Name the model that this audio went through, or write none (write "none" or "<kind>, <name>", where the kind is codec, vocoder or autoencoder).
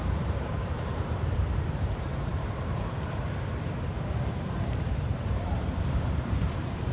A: vocoder, BigVGAN v2